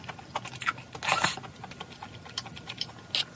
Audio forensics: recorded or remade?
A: recorded